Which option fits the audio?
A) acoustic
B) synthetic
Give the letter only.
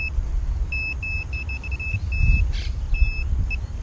A